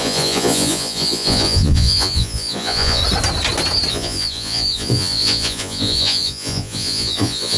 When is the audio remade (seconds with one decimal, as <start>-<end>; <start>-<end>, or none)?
0.0-3.0; 3.9-7.6